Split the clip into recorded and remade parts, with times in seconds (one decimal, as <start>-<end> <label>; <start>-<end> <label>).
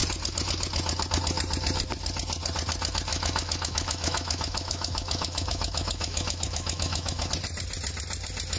0.0-3.1 recorded; 3.1-7.3 remade; 7.3-8.6 recorded